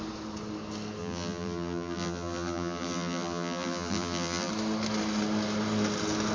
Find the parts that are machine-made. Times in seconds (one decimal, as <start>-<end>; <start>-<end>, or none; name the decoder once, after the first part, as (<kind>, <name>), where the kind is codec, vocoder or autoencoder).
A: 1.0-4.5 (vocoder, BigVGAN v2)